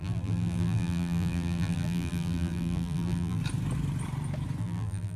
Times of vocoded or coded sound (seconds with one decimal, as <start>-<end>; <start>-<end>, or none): 0.0-3.4; 4.6-5.2